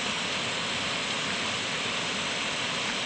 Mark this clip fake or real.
real